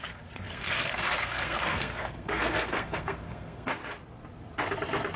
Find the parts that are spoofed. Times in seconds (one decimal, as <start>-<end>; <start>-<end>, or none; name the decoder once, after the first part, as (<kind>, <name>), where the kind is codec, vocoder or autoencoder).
0.0-3.8 (codec, SNAC)